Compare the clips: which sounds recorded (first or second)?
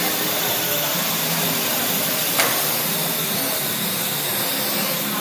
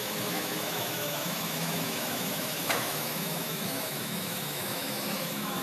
first